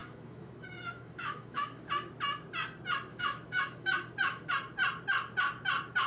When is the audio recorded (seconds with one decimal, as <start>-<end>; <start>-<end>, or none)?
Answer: 1.8-3.1; 4.5-6.1